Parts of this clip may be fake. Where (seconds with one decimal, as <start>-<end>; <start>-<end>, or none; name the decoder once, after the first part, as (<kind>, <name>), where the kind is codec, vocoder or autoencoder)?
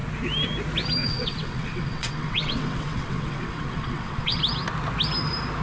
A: 1.0-4.4 (vocoder, WaveNeXt)